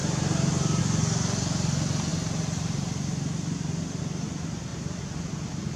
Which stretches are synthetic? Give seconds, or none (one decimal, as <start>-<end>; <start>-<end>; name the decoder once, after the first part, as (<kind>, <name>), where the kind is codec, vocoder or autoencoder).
0.0-0.8 (vocoder, BigVGAN v2); 4.7-5.2

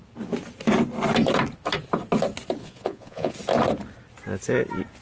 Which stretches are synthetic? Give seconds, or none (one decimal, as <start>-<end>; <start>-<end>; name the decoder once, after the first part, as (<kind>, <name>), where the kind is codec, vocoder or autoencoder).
2.6-3.3 (vocoder, Vocos)

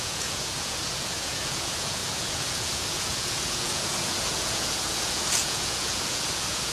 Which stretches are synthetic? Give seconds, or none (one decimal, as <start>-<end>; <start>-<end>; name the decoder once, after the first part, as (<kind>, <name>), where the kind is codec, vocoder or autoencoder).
0.0-6.7 (vocoder, Vocos)

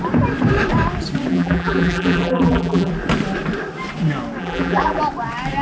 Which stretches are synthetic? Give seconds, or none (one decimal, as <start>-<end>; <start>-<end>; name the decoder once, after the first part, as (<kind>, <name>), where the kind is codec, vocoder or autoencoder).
1.3-2.9 (vocoder, BigVGAN v2); 4.4-5.0

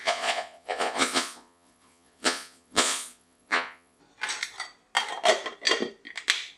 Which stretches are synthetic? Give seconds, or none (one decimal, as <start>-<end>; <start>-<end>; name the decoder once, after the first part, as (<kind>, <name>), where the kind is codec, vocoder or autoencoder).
0.0-4.0 (vocoder, Vocos)

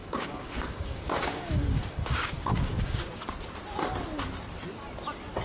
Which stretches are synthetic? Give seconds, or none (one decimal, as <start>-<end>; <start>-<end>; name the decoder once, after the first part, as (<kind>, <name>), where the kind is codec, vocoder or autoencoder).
0.0-3.2 (codec, DAC)